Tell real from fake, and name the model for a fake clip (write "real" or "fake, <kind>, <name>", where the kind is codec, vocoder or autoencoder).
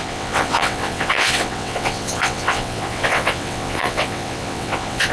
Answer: fake, vocoder, WaveNeXt